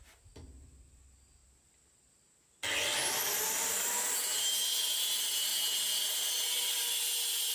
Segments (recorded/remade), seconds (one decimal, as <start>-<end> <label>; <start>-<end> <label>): 0.0-7.5 recorded